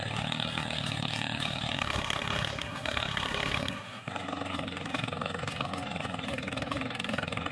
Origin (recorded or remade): remade